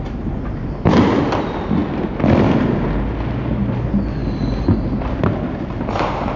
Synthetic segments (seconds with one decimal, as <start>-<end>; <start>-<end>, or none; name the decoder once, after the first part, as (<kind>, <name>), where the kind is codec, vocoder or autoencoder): none